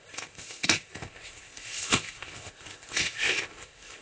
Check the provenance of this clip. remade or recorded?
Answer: remade